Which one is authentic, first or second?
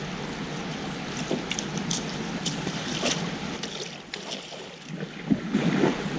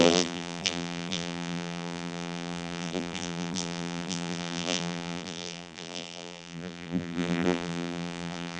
first